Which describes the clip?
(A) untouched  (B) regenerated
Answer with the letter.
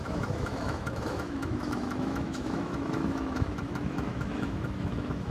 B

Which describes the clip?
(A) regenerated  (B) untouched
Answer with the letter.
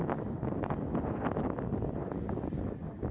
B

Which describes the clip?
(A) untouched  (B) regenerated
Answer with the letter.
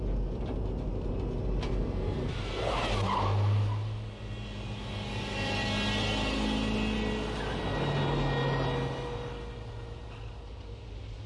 A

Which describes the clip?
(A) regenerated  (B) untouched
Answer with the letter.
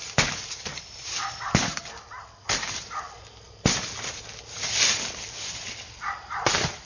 B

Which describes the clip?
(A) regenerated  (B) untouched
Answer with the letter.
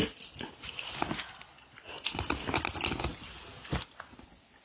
B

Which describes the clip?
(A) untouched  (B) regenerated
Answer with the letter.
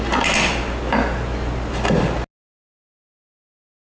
A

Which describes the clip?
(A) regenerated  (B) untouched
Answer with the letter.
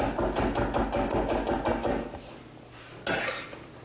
B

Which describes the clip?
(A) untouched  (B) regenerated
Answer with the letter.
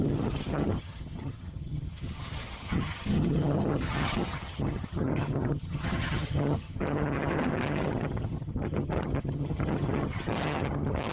B